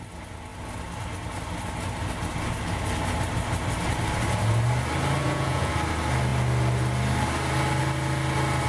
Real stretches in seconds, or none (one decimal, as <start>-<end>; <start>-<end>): 0.0-5.2; 5.7-8.7